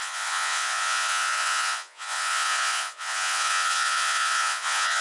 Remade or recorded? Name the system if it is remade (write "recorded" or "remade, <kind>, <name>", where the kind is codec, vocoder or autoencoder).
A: remade, vocoder, Vocos